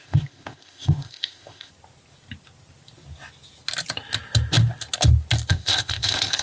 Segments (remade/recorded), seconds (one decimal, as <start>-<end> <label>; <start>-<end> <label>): 0.0-1.7 remade; 1.7-5.5 recorded; 5.5-6.4 remade